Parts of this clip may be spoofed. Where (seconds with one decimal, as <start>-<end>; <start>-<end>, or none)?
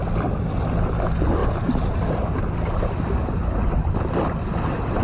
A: 1.4-2.0; 3.2-3.9